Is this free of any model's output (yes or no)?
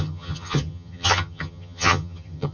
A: no